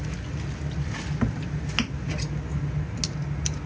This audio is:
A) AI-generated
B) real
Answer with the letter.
B